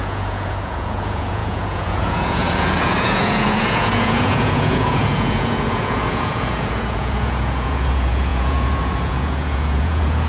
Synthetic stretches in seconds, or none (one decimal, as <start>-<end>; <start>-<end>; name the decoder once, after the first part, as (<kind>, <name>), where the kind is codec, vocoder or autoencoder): 0.0-10.3 (vocoder, Vocos)